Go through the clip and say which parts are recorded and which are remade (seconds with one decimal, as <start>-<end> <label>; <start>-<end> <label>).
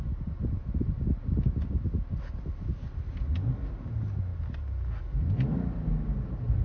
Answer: 0.0-6.6 recorded